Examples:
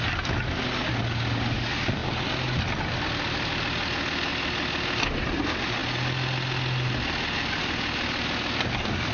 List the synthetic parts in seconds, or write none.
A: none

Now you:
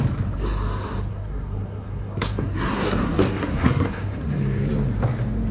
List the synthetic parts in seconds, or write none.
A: 1.1-4.4 (codec, SNAC)

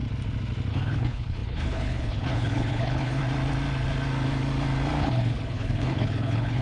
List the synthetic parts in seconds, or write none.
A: 0.7-3.2 (codec, HILCodec); 5.0-6.6

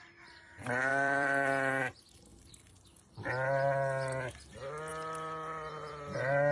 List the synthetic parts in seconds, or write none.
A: 0.9-1.8 (vocoder, BigVGAN v2); 2.3-3.3

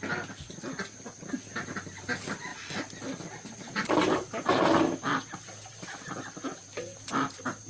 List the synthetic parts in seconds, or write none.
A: none